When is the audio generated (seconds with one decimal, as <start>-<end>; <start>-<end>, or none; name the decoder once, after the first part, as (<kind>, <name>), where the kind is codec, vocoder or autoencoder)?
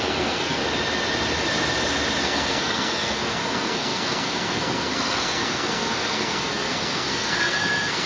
0.0-0.6 (codec, SNAC); 2.2-8.1